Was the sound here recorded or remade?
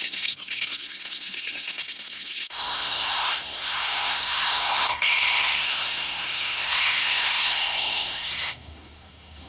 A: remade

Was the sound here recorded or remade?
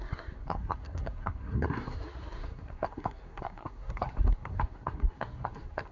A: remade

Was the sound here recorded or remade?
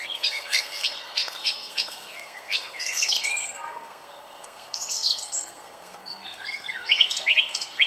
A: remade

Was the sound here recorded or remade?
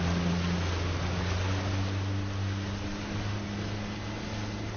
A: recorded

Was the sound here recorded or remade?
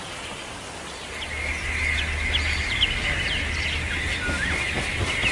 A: recorded